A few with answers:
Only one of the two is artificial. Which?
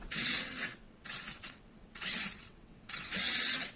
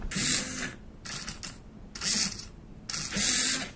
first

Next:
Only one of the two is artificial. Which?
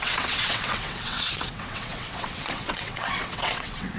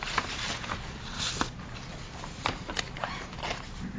first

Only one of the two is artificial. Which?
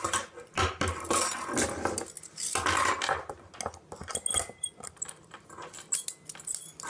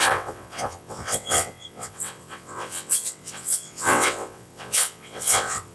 second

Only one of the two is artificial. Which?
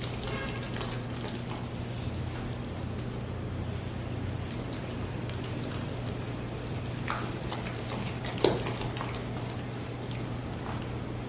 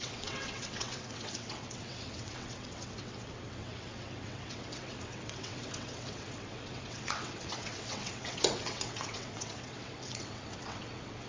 second